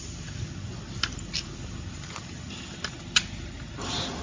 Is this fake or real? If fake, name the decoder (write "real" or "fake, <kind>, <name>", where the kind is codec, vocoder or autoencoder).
real